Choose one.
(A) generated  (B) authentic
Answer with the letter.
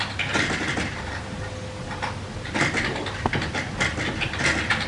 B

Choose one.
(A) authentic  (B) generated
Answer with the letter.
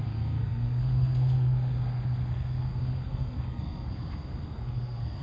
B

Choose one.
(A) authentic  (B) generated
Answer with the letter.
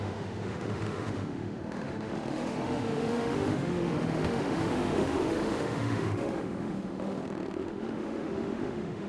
B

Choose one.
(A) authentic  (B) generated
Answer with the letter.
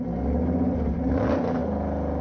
A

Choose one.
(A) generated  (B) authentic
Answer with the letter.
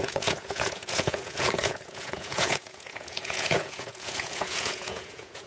A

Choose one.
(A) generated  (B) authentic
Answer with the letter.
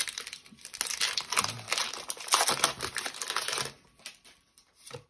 B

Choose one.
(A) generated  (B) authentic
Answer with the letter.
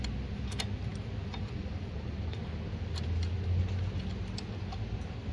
B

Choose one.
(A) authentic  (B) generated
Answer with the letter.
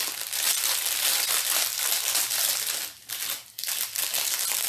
A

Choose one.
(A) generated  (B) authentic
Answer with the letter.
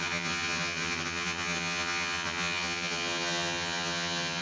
A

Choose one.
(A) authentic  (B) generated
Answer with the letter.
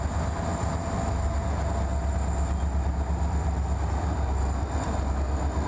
A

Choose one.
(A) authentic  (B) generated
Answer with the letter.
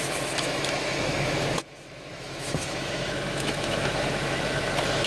B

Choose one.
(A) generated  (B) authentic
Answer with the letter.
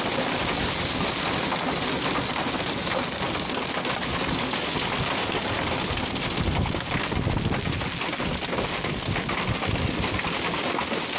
B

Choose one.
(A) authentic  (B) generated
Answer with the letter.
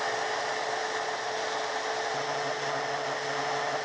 A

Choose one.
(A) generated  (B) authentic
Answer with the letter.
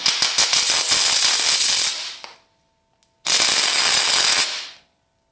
B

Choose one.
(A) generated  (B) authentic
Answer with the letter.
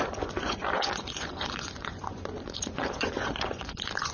A